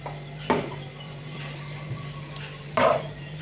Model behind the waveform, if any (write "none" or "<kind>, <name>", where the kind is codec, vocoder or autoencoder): vocoder, BigVGAN v2